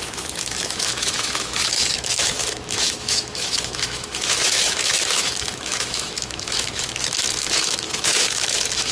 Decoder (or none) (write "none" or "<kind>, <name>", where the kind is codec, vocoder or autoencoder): autoencoder, DAC-VAE